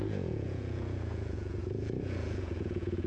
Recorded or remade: remade